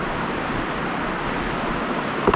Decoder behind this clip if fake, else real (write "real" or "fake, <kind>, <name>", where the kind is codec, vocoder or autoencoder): real